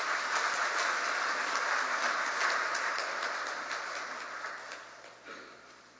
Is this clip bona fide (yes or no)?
yes